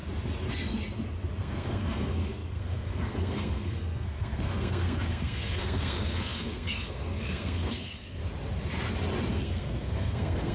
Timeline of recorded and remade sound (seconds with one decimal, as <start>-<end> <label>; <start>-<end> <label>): 0.0-1.4 recorded; 1.4-8.2 remade; 8.2-9.3 recorded; 9.3-10.5 remade

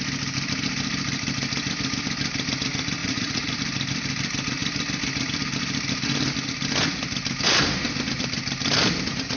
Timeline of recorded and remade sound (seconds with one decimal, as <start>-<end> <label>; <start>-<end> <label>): 0.0-3.0 recorded; 3.0-3.5 remade; 3.5-9.4 recorded

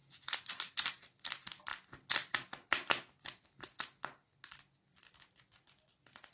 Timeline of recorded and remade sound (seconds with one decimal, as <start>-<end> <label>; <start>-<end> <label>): 0.0-6.3 recorded

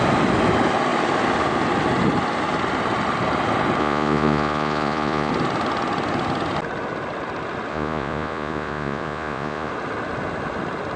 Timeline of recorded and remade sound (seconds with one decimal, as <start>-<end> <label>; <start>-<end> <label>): 0.0-3.8 recorded; 3.8-5.3 remade; 5.3-7.7 recorded; 7.7-9.7 remade; 9.7-11.0 recorded

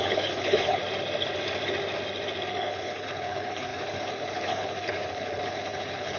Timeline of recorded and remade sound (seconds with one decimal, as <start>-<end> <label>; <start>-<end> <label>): 0.0-0.8 remade; 0.8-2.5 recorded; 2.5-6.2 remade

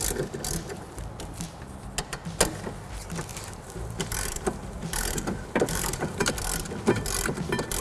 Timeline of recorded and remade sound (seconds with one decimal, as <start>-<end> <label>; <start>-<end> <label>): 0.0-3.3 recorded; 3.3-6.3 remade; 6.3-7.8 recorded